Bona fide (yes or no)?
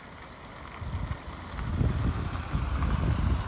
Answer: yes